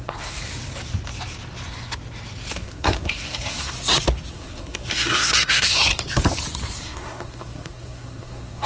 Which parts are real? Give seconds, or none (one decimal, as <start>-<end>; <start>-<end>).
0.5-2.5; 3.7-4.3; 5.9-6.8